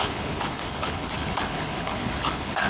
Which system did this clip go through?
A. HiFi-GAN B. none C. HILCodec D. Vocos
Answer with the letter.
C